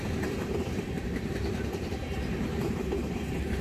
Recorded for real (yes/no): no